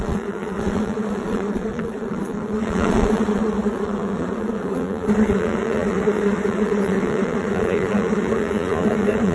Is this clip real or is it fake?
fake